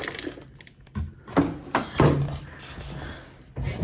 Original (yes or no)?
yes